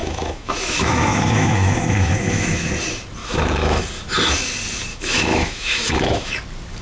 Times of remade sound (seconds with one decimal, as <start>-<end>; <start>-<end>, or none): 0.0-2.7; 3.2-3.8; 4.9-6.3